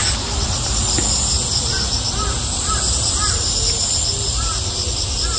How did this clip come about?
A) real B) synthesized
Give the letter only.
A